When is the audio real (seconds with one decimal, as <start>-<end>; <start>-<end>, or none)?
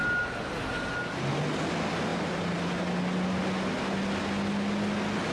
0.0-5.3